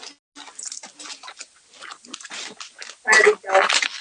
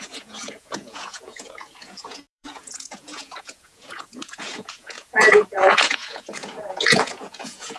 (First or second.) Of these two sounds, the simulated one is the second